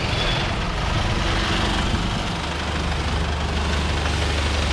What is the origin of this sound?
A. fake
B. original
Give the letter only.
B